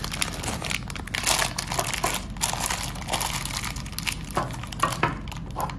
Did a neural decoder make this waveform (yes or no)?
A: no